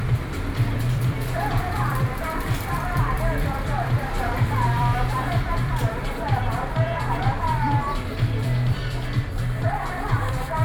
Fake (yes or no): yes